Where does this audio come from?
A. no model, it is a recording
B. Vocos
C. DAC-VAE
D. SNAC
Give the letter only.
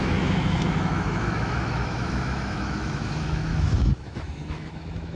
C